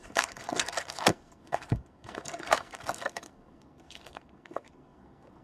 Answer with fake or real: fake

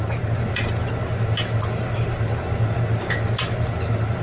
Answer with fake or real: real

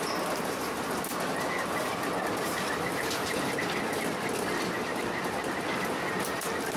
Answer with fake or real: real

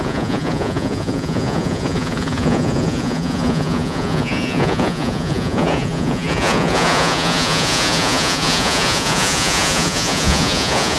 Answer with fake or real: fake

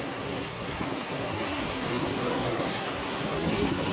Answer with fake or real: fake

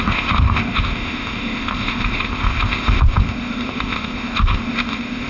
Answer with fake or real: fake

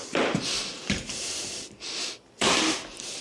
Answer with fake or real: real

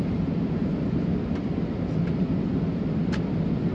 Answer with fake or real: real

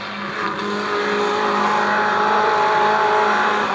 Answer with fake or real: real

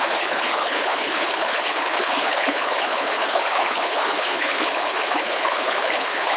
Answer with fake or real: fake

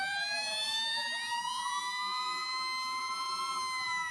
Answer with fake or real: fake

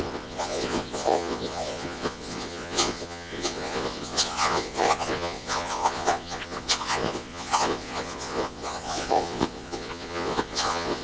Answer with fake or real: fake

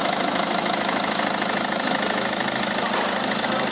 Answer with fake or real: real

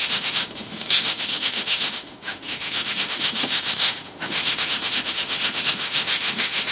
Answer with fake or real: fake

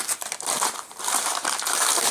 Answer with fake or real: fake